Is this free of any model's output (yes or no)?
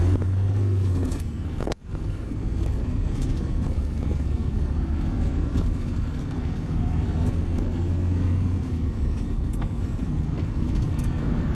no